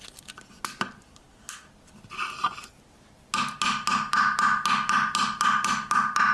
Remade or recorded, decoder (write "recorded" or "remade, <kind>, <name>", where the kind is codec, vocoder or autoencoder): recorded